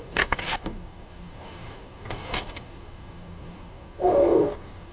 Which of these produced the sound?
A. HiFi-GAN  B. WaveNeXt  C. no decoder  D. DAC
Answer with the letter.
D